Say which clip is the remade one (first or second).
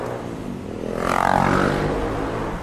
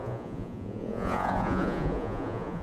second